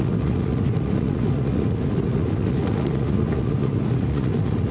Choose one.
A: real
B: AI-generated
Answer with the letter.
B